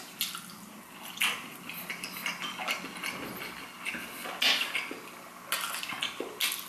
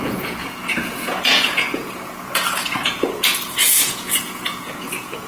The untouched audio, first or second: first